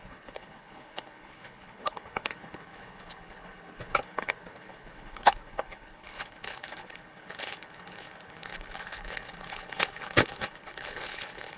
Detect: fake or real fake